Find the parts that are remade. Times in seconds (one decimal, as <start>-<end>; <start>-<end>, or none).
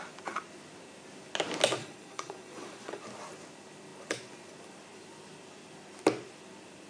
1.8-3.0